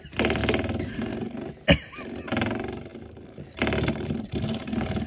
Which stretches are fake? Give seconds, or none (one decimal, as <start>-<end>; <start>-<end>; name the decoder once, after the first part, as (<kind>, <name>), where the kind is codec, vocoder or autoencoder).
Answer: none

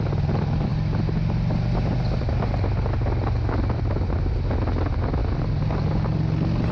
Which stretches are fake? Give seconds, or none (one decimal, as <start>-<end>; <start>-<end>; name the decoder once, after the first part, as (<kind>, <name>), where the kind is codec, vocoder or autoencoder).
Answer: none

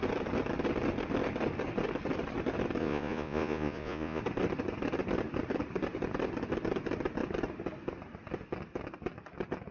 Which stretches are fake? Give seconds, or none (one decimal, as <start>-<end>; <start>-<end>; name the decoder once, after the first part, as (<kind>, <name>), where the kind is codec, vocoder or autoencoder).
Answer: 2.8-4.2 (vocoder, Vocos)

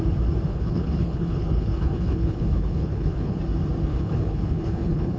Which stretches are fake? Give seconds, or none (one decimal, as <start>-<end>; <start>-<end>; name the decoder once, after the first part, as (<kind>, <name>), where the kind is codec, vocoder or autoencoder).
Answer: 0.5-3.4 (codec, HILCodec); 3.9-5.2

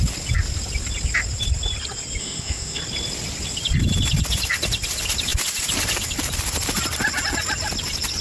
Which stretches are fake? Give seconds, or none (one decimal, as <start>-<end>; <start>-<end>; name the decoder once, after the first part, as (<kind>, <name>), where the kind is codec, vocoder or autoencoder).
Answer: 2.2-2.8 (autoencoder, DAC-VAE)